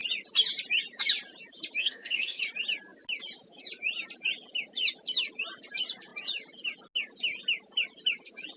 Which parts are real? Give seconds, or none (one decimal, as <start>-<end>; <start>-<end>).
0.0-1.8; 2.4-8.6